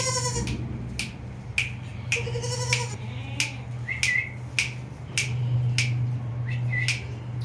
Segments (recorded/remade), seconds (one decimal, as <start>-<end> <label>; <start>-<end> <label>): 0.0-7.4 recorded